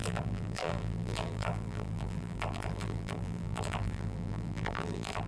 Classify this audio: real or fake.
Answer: fake